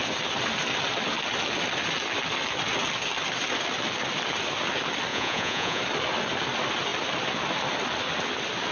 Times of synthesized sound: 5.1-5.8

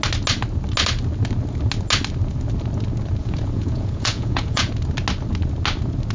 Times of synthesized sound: 3.2-4.7

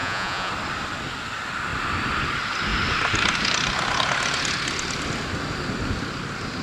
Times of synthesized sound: 0.0-0.5